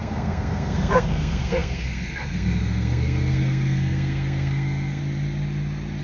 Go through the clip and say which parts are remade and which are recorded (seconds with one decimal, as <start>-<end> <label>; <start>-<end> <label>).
0.0-5.0 remade; 5.0-6.0 recorded